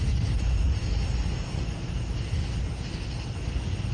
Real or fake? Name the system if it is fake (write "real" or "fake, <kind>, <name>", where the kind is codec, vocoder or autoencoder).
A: real